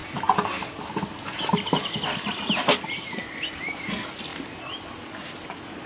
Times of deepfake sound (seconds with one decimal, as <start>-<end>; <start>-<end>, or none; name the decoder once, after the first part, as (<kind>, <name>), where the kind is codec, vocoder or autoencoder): none